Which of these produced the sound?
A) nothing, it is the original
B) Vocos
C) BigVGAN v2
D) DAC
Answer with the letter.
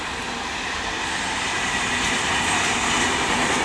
A